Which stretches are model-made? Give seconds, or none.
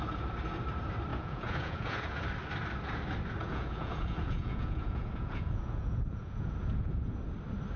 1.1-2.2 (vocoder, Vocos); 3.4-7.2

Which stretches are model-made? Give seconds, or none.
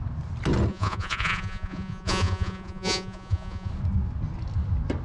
0.7-3.7 (vocoder, Vocos)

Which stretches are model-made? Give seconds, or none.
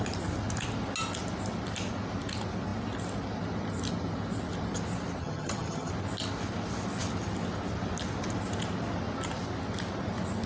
5.2-5.9 (vocoder, HiFi-GAN)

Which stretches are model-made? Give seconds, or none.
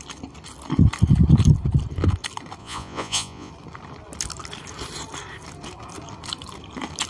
2.6-3.5 (vocoder, Vocos)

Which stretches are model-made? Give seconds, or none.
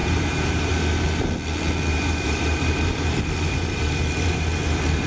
0.0-0.7 (vocoder, BigVGAN v2); 1.9-5.1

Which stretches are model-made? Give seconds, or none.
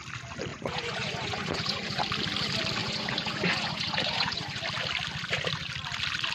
0.5-2.0 (vocoder, Vocos); 2.8-4.6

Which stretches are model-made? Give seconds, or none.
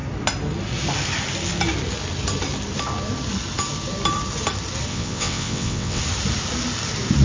4.9-6.0 (vocoder, WaveNeXt)